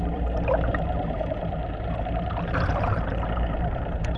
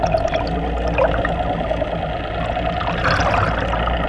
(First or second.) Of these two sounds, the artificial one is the first